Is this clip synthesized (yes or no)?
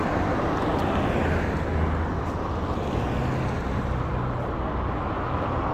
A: no